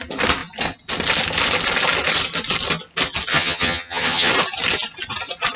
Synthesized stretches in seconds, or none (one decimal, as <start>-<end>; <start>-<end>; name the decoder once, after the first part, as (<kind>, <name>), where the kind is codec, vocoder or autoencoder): 3.3-4.3 (vocoder, HiFi-GAN)